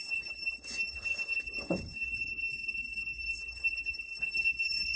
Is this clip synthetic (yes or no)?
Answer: yes